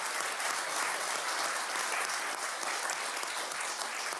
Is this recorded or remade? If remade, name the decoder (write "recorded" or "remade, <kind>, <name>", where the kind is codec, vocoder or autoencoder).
recorded